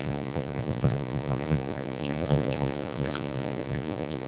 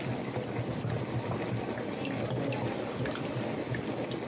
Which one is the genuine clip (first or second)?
second